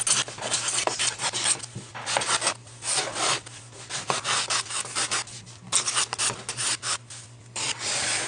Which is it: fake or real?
real